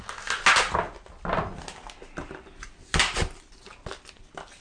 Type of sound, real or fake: real